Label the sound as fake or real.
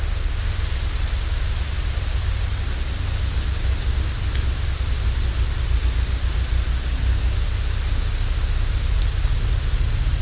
real